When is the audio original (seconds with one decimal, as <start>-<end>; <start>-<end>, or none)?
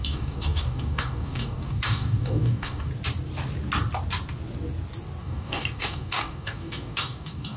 2.9-5.2